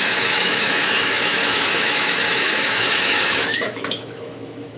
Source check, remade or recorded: remade